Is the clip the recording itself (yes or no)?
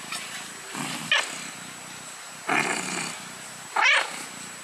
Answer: yes